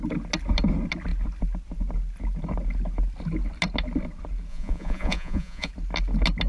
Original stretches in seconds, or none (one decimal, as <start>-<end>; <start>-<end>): 0.0-4.5; 5.7-6.5